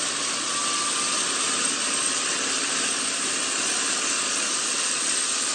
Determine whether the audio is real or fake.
real